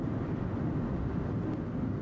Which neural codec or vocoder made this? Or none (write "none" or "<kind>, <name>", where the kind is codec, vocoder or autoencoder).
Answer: none